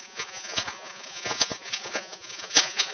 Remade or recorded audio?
remade